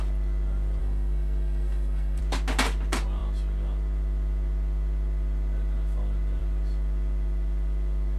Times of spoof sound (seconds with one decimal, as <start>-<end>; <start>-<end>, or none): 0.8-2.2